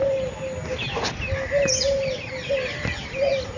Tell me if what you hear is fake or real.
real